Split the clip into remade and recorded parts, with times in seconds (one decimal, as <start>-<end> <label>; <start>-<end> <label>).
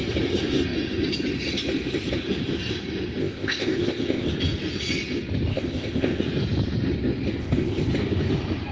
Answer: 0.0-3.2 recorded; 3.2-4.3 remade; 4.3-5.5 recorded; 5.5-6.2 remade; 6.2-7.4 recorded; 7.4-7.9 remade; 7.9-8.7 recorded